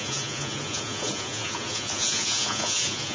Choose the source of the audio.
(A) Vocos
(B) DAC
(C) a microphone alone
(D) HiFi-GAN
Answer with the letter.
A